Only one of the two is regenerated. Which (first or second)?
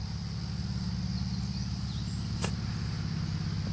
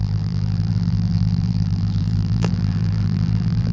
second